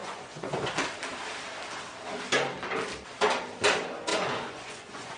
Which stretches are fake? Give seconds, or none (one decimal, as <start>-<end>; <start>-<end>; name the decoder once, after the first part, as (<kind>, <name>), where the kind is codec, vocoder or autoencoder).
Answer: 0.0-0.7 (vocoder, Vocos); 4.1-5.2